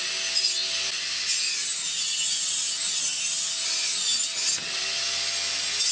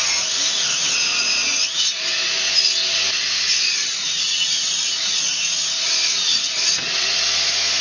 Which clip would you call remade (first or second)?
second